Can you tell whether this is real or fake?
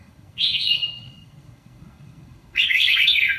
fake